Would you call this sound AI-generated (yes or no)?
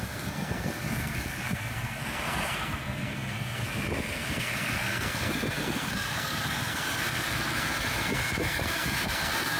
yes